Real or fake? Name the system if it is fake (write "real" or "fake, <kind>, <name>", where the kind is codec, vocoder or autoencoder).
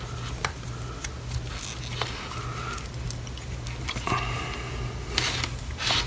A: real